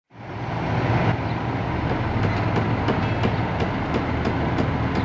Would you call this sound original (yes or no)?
yes